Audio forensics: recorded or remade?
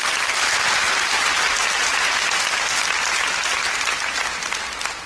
recorded